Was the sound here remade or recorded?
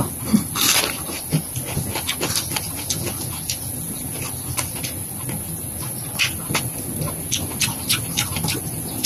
recorded